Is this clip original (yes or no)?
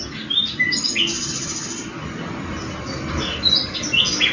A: yes